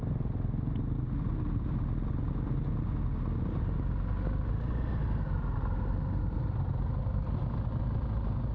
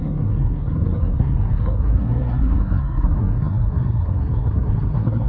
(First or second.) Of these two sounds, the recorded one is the first